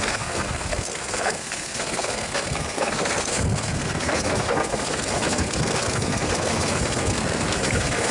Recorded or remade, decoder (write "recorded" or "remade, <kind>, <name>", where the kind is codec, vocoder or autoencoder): remade, codec, SNAC